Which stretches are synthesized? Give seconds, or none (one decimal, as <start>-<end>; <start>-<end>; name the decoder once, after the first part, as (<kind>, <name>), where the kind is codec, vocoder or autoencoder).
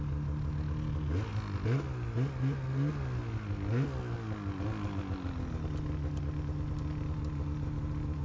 none